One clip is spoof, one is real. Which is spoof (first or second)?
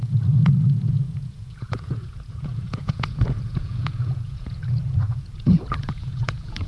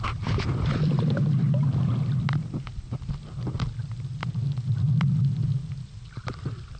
first